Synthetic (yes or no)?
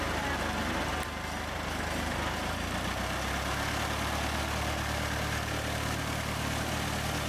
no